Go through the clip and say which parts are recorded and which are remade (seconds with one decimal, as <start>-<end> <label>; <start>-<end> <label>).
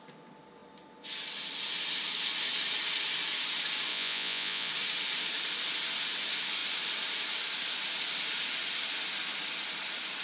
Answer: 0.0-3.9 recorded; 3.9-4.7 remade; 4.7-10.2 recorded